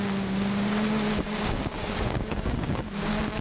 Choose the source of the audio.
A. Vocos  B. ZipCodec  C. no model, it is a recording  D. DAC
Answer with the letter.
D